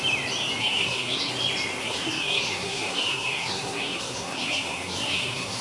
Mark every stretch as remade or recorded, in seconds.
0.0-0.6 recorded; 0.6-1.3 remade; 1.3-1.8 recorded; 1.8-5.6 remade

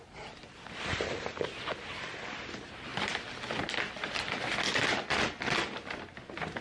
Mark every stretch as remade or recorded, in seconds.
0.0-6.6 recorded

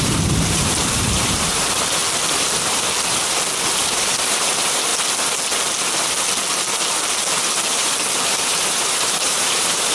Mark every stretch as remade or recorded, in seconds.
0.0-2.0 remade; 2.0-3.8 recorded; 3.8-4.9 remade; 4.9-8.2 recorded; 8.2-9.9 remade

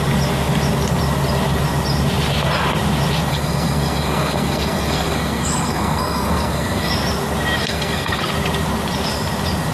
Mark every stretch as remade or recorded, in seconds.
0.0-3.3 recorded; 3.3-6.9 remade; 6.9-7.6 recorded; 7.6-8.2 remade; 8.2-9.7 recorded

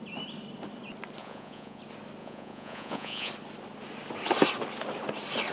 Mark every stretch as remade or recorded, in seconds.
0.0-1.2 recorded; 1.2-1.8 remade; 1.8-2.2 recorded; 2.2-3.3 remade; 3.3-5.5 recorded

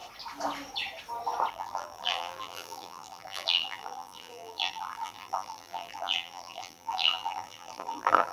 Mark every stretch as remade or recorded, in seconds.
0.0-1.5 recorded; 1.5-8.3 remade

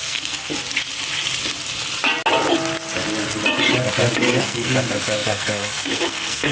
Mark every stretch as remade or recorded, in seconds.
0.0-0.5 remade; 0.5-4.4 recorded; 4.4-6.5 remade